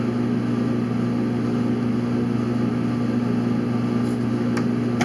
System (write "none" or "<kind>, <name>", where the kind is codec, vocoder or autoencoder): none